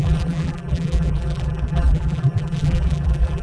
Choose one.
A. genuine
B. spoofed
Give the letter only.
B